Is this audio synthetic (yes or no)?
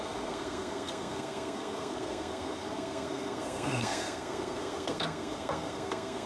yes